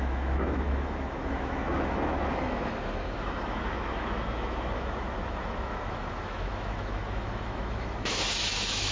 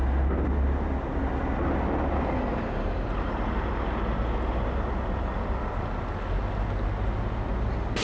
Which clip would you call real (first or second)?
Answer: second